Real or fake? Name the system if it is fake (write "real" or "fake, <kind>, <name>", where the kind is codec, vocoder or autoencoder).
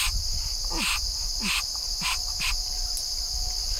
real